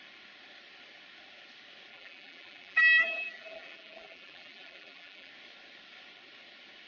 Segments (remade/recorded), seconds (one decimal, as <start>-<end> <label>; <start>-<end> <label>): 0.0-1.9 recorded; 1.9-5.3 remade; 5.3-6.9 recorded